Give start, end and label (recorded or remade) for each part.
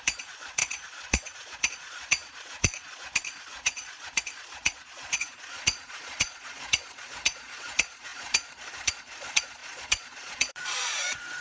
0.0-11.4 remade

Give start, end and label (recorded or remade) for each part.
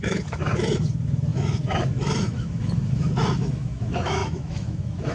0.0-5.1 remade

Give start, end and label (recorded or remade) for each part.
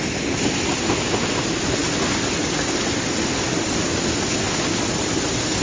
0.0-5.6 recorded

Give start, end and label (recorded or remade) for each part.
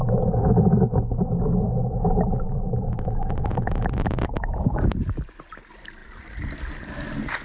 0.0-1.8 recorded; 1.8-5.5 remade; 5.5-7.4 recorded